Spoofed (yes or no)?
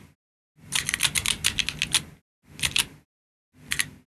no